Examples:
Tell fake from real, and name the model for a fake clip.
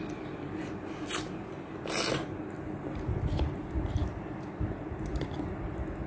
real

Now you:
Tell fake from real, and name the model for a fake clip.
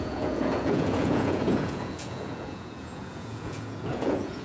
fake, vocoder, Vocos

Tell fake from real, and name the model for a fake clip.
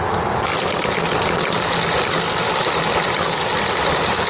real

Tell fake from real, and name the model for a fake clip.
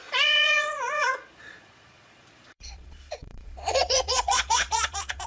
fake, vocoder, Vocos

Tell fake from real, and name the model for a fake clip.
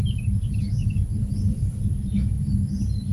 real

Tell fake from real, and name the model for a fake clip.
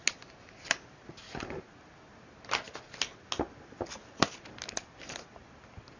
real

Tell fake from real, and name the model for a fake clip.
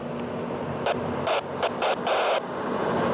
real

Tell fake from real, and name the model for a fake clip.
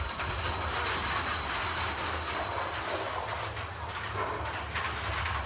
real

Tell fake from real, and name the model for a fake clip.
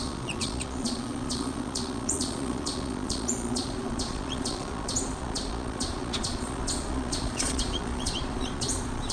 fake, vocoder, Vocos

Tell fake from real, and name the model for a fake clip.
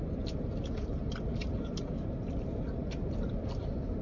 real